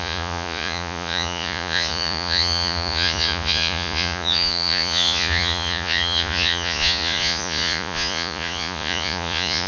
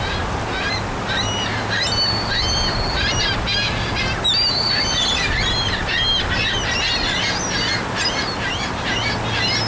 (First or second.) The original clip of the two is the second